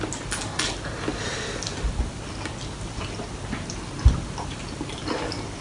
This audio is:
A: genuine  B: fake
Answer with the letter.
A